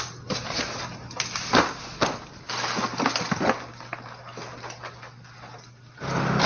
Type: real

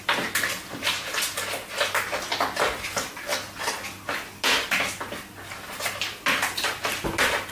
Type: real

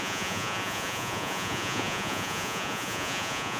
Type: fake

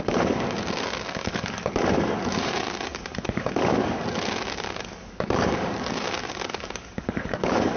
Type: fake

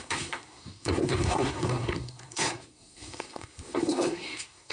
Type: fake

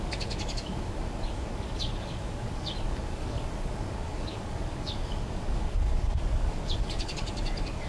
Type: fake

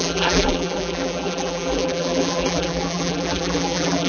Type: fake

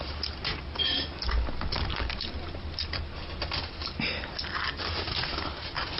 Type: real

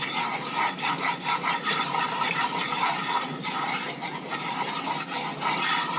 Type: real